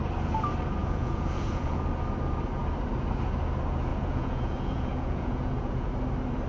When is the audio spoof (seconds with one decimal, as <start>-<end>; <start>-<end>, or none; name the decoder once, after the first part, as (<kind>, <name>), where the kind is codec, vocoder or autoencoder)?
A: 0.8-1.8 (vocoder, Vocos); 3.9-5.9